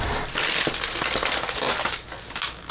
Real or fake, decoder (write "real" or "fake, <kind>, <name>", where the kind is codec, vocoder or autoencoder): real